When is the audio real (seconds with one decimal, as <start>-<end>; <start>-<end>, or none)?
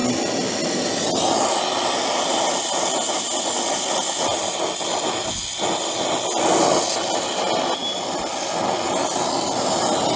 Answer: 0.0-10.2